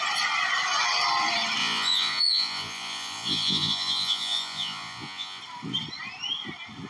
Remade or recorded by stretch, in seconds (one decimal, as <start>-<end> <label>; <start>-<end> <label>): 0.0-1.6 recorded; 1.6-5.4 remade; 5.4-6.9 recorded